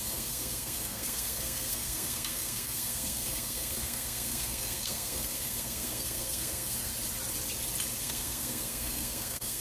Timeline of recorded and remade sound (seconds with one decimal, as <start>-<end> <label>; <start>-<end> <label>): 0.0-6.9 remade; 6.9-8.0 recorded; 8.0-9.6 remade

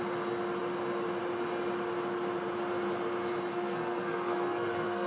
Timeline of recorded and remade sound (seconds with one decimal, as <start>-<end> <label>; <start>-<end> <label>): 0.0-3.5 recorded; 3.5-5.1 remade

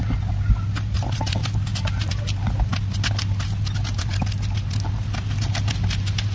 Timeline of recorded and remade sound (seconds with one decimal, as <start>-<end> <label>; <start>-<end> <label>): 0.0-6.3 recorded

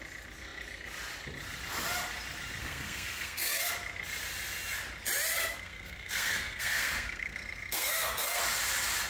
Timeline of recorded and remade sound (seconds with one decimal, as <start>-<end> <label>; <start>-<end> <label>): 0.0-2.6 recorded; 2.6-3.7 remade; 3.7-5.4 recorded; 5.4-8.4 remade; 8.4-9.1 recorded

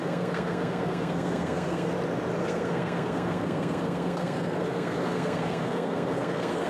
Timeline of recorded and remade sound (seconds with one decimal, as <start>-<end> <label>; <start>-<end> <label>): 0.0-1.9 remade; 1.9-2.4 recorded; 2.4-6.7 remade

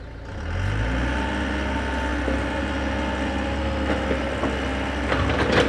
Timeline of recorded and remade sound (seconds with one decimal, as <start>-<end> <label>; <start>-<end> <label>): 0.0-5.7 recorded